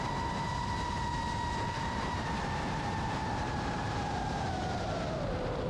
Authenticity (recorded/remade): remade